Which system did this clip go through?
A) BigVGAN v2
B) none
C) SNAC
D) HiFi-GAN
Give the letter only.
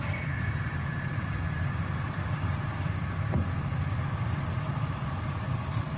A